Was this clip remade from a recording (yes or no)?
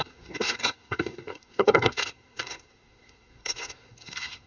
yes